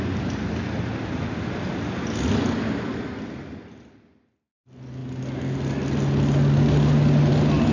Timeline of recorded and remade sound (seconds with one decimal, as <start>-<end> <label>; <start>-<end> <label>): 0.0-7.7 recorded